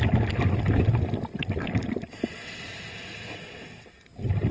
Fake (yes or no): no